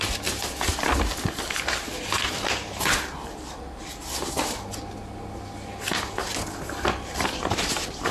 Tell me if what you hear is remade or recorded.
recorded